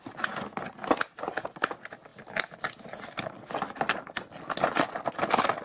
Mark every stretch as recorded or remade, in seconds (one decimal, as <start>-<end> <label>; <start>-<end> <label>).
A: 0.0-5.6 recorded